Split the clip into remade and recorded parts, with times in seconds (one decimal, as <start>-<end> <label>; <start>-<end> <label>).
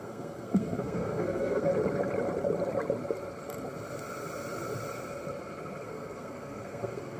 0.0-1.7 remade; 1.7-5.8 recorded; 5.8-7.2 remade